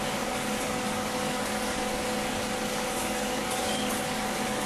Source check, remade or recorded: remade